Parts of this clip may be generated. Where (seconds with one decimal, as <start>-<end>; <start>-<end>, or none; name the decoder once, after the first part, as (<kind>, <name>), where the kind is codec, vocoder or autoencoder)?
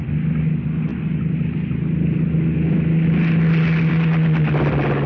none